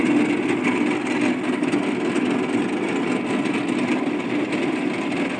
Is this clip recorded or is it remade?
recorded